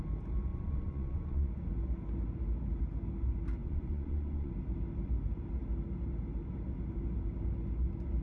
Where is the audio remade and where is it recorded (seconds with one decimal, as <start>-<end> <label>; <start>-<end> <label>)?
0.0-0.5 recorded; 0.5-1.5 remade; 1.5-3.6 recorded; 3.6-4.5 remade; 4.5-8.2 recorded